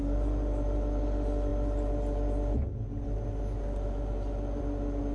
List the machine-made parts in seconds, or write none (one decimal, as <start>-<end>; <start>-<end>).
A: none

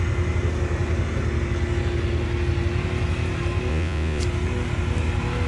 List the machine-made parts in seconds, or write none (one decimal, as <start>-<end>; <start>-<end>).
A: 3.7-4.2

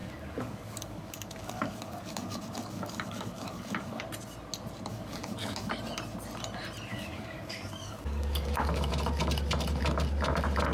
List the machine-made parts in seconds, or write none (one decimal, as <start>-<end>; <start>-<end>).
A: 0.0-4.0; 4.9-5.7; 6.9-8.9